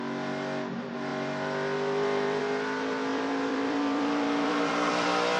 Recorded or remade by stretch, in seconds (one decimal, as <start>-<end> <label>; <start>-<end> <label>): 0.0-1.1 recorded; 1.1-2.4 remade; 2.4-3.1 recorded; 3.1-5.4 remade